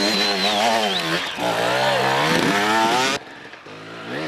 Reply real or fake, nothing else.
real